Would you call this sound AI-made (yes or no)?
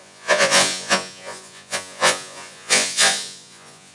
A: yes